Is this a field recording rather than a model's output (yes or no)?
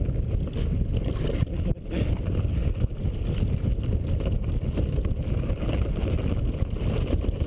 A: yes